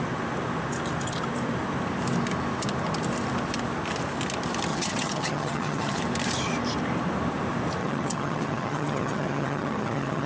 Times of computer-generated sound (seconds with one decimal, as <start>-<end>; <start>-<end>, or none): 4.7-6.0; 7.8-10.3